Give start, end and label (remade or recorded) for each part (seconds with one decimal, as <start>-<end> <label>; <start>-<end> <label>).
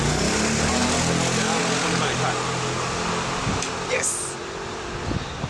0.0-5.5 recorded